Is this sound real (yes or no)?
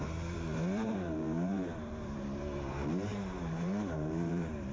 no